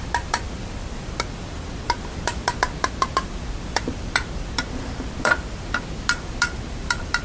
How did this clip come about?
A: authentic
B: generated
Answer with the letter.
B